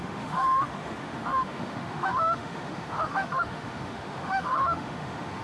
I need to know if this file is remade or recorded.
remade